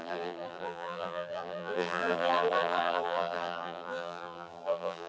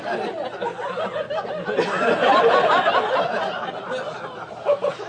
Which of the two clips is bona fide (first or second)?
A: second